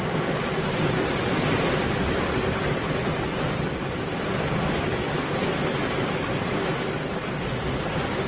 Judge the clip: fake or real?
real